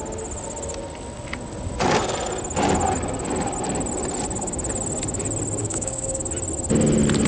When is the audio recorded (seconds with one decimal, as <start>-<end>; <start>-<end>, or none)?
0.0-5.6; 6.2-7.3

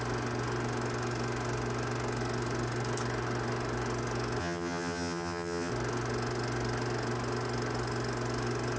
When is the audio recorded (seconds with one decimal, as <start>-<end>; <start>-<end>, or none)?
0.0-4.4; 5.7-8.8